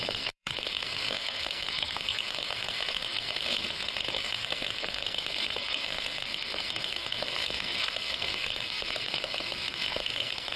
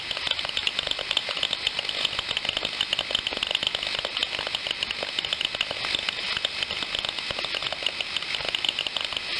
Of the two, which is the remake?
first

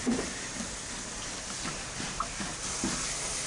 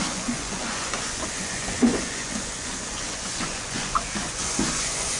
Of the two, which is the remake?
second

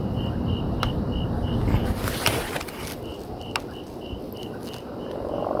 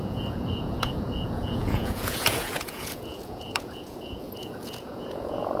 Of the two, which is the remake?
second